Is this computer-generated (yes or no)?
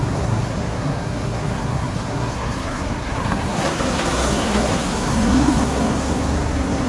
yes